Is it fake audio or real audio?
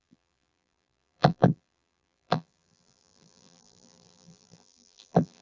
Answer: fake